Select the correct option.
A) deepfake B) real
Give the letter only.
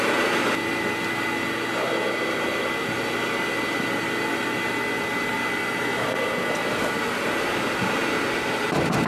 B